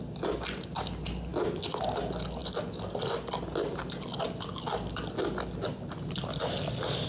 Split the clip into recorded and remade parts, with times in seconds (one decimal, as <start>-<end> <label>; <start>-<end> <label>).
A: 0.0-7.1 recorded